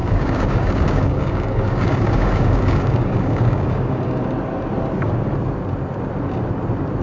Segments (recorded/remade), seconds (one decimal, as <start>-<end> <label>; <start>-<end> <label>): 0.0-4.2 remade; 4.2-7.0 recorded